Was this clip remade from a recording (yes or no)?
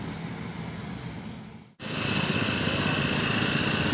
no